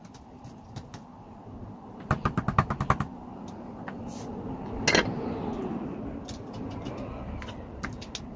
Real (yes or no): yes